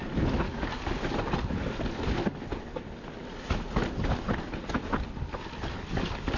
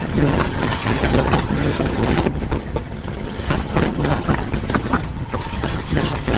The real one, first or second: first